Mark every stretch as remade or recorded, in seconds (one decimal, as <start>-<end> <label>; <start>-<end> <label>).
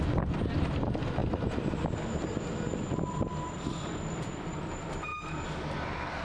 0.0-1.2 remade; 1.2-2.8 recorded; 2.8-5.1 remade; 5.1-5.8 recorded; 5.8-6.2 remade